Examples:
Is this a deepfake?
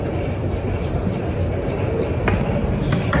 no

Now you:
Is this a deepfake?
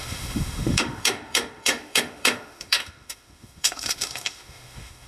yes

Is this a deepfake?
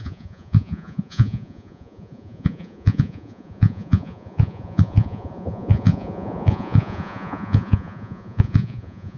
yes